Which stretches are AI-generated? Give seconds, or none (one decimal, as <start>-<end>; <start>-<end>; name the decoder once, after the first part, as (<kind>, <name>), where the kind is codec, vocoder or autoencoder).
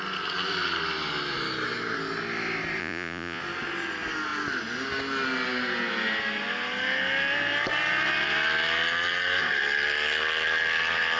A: 2.8-3.4 (vocoder, Vocos)